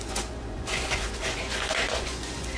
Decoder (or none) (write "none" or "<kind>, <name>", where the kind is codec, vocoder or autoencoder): vocoder, Vocos